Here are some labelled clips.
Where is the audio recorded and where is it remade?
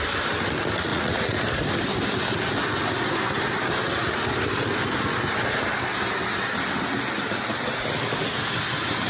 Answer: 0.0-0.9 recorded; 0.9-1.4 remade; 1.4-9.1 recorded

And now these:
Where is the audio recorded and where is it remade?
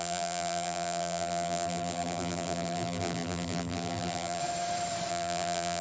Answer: 0.0-4.4 remade; 4.4-5.1 recorded; 5.1-5.8 remade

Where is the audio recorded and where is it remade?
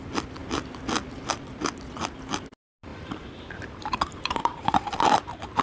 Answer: 0.0-2.9 recorded; 2.9-5.6 remade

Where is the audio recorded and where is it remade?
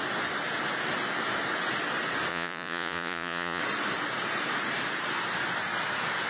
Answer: 0.0-2.3 recorded; 2.3-3.6 remade; 3.6-6.3 recorded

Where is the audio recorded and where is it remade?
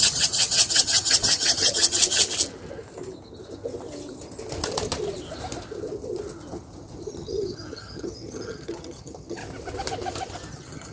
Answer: 0.0-2.0 remade; 2.0-7.1 recorded; 7.1-9.4 remade; 9.4-10.5 recorded; 10.5-10.9 remade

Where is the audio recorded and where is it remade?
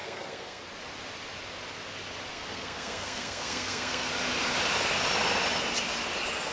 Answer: 0.0-0.6 remade; 0.6-2.3 recorded; 2.3-4.1 remade; 4.1-6.5 recorded